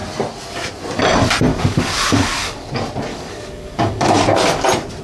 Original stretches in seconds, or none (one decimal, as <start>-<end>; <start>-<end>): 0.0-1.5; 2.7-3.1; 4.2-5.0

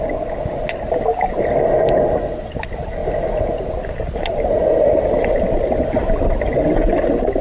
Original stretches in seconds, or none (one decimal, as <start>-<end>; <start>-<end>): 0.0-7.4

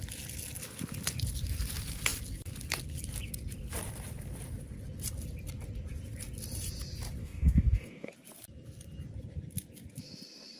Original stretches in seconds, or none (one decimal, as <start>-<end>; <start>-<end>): 0.0-7.2; 8.1-10.6

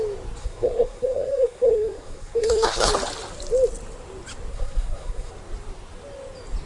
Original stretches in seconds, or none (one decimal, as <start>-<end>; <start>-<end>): 0.0-0.4; 2.9-4.5; 5.3-6.7

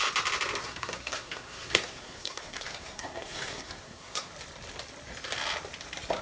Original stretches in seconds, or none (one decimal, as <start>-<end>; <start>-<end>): 0.0-0.6; 4.3-6.2

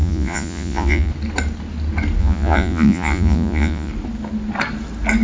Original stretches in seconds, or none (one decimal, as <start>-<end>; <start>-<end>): 1.1-2.2; 3.9-5.2

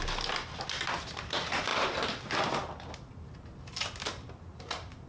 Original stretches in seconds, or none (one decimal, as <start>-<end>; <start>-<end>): 0.0-5.1

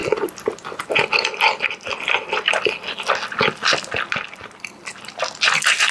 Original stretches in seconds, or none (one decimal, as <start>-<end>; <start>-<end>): 0.0-5.9